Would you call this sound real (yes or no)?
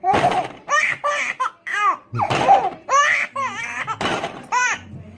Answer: no